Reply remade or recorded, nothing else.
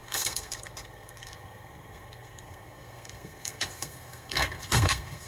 remade